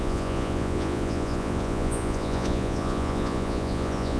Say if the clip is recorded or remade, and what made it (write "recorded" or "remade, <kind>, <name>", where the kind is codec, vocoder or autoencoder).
remade, vocoder, Vocos